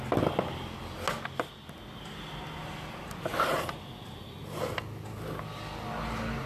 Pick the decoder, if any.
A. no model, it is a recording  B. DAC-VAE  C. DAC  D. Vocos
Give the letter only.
A